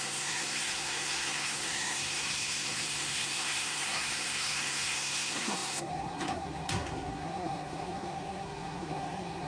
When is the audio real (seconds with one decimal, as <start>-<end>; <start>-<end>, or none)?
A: none